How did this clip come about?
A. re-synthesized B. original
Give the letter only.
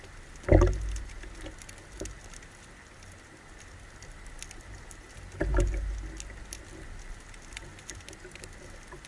B